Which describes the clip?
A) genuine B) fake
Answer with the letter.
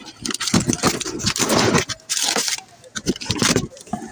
A